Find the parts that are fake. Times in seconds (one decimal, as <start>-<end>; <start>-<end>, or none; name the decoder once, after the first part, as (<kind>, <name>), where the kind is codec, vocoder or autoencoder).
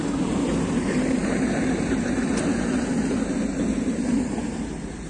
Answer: 0.0-5.1 (vocoder, BigVGAN v2)